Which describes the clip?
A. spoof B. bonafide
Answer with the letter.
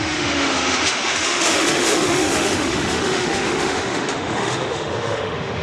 A